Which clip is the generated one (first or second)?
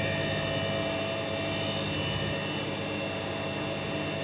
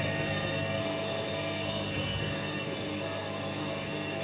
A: second